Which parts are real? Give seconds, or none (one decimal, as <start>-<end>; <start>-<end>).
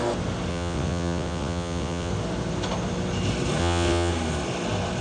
0.0-0.5; 2.1-3.6; 4.1-5.0